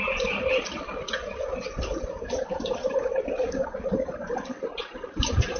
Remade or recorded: recorded